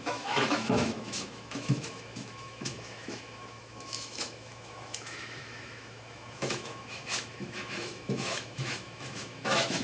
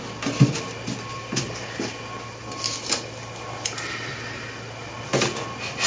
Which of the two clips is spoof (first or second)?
first